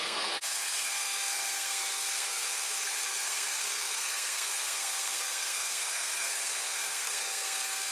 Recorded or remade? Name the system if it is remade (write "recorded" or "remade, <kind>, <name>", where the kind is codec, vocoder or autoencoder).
remade, codec, SNAC